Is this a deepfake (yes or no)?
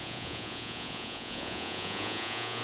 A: yes